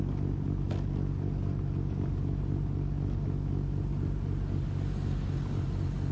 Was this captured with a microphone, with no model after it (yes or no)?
yes